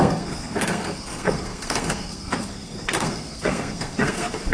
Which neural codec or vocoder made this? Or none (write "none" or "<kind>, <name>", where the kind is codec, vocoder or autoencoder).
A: codec, SNAC